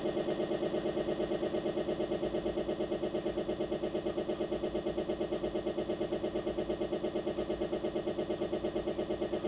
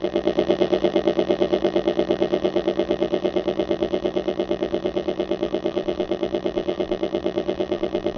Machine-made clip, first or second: second